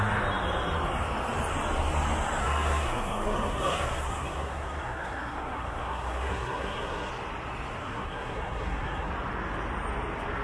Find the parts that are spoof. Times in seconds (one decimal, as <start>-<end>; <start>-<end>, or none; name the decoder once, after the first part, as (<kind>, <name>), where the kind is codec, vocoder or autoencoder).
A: 2.4-7.1 (codec, SNAC); 7.8-9.1